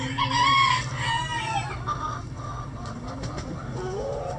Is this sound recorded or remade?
recorded